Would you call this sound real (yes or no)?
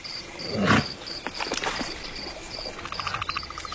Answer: yes